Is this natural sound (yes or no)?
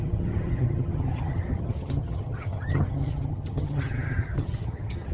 no